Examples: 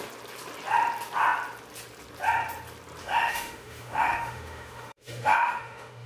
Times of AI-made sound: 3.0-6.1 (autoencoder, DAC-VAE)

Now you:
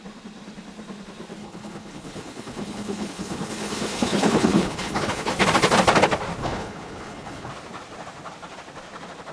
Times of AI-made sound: 1.4-5.3 (codec, HILCodec); 6.4-7.5

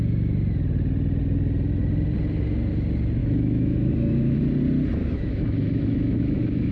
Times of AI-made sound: 3.2-4.4 (autoencoder, DAC-VAE); 5.0-6.7